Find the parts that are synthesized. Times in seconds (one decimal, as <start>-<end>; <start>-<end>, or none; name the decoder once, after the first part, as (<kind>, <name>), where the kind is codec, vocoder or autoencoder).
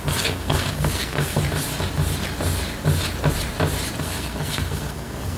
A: 0.0-1.4 (codec, SNAC); 4.0-5.4